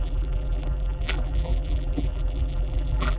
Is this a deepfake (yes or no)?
yes